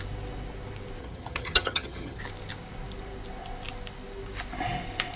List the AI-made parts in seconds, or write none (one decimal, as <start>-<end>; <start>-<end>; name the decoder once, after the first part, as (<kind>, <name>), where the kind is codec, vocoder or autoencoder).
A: 1.0-2.2 (vocoder, HiFi-GAN)